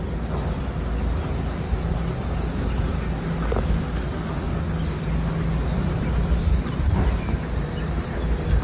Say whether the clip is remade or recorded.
recorded